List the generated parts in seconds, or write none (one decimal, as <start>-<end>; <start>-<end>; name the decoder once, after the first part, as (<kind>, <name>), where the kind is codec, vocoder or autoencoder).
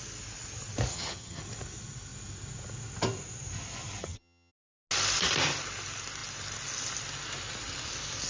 0.9-1.4 (vocoder, HiFi-GAN); 4.0-4.5